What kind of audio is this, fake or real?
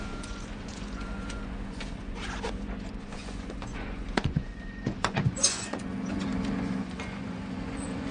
fake